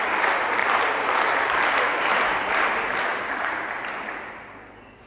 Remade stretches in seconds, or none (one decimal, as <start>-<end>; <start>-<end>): 0.6-2.6; 3.1-3.9